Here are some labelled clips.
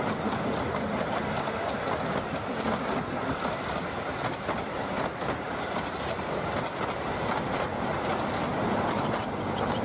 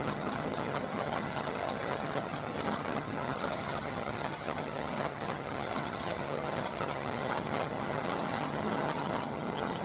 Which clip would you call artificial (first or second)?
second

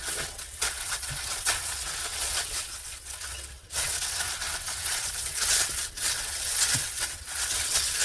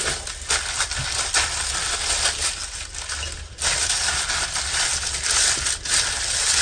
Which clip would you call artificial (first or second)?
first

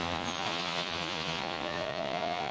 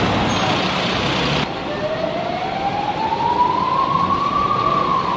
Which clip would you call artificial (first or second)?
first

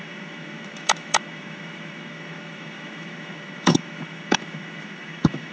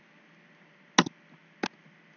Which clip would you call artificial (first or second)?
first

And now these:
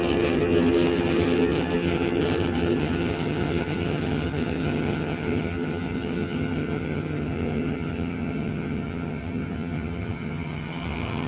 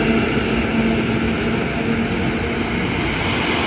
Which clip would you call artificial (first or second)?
first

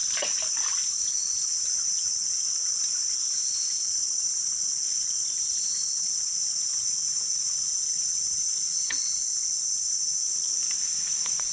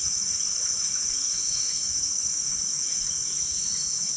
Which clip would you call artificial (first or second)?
second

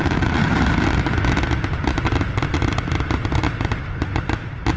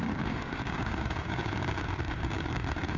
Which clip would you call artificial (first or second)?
second